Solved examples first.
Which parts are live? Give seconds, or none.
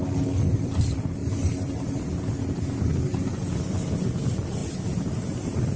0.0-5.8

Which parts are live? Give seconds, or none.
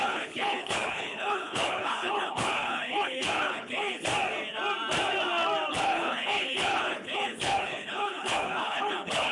4.1-5.7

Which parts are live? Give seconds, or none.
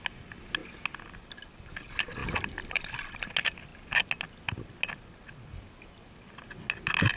0.0-7.2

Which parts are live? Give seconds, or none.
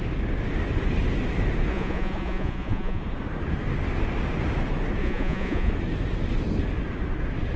0.0-1.7; 3.0-5.0; 5.7-7.6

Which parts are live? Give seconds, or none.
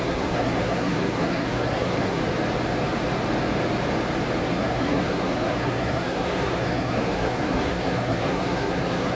2.2-4.4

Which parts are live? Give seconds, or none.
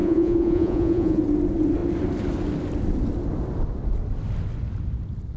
1.2-5.4